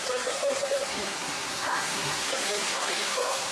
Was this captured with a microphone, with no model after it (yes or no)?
no